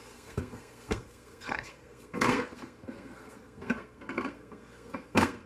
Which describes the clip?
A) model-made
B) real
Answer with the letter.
A